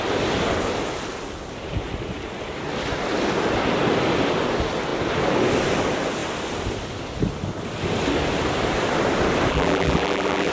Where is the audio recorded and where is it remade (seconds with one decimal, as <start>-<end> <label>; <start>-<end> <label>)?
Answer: 0.0-9.5 recorded; 9.5-10.5 remade